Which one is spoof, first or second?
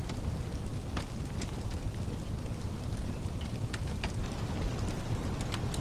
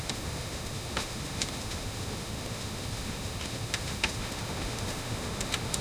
second